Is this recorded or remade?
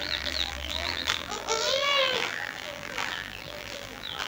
remade